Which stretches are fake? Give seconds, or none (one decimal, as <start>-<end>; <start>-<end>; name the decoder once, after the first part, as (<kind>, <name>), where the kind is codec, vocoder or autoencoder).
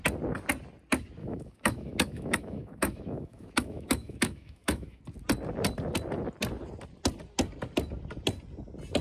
1.2-5.0 (autoencoder, DAC-VAE)